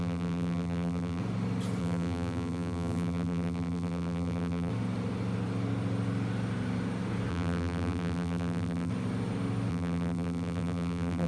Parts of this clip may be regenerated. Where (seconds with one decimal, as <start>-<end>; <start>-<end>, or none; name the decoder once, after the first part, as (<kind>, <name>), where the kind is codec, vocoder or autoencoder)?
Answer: 0.0-1.2 (vocoder, BigVGAN v2); 1.8-4.7; 7.3-8.9; 9.7-11.3